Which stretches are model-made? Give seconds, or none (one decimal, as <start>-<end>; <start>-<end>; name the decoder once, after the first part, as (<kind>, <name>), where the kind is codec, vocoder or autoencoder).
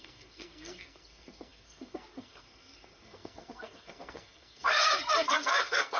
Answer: 0.0-6.0 (codec, SNAC)